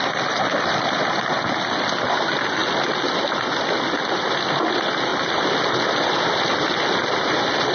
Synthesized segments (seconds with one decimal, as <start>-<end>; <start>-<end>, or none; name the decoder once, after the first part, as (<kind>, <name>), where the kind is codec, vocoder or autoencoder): none